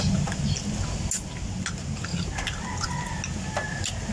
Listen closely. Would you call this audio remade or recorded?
recorded